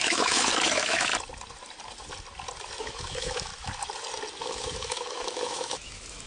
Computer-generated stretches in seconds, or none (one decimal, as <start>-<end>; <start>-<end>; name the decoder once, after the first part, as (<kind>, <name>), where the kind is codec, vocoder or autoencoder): 0.0-1.1 (autoencoder, DAC-VAE); 2.8-3.5; 4.4-6.3